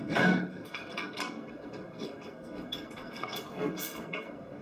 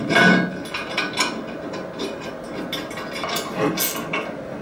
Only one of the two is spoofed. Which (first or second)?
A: first